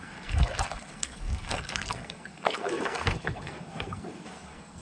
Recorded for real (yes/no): no